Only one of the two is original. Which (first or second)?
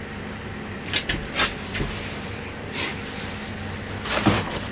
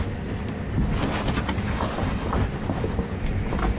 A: first